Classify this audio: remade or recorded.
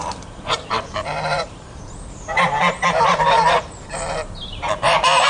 remade